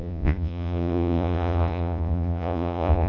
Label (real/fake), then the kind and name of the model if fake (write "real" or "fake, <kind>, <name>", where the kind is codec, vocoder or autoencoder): fake, vocoder, Vocos